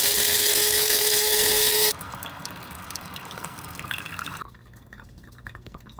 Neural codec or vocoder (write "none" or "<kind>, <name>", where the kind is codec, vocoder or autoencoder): codec, SNAC